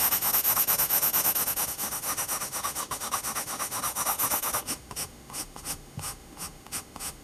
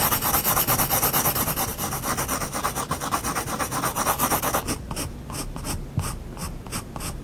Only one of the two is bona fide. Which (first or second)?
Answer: second